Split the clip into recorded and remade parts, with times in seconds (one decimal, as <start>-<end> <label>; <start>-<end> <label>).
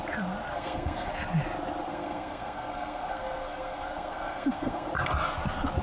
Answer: 0.0-0.5 recorded; 0.5-1.1 remade; 1.1-1.9 recorded; 1.9-4.9 remade; 4.9-5.8 recorded